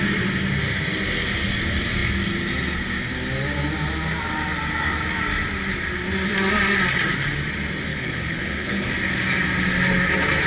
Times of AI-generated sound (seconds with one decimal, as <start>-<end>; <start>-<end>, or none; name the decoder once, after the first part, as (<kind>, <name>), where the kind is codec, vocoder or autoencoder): 7.9-8.9 (codec, HILCodec)